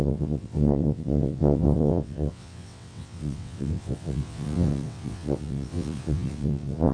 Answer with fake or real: fake